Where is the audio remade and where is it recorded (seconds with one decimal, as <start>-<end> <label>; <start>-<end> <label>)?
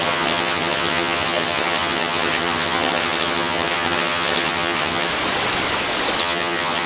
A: 0.0-5.1 remade; 5.1-6.2 recorded; 6.2-6.9 remade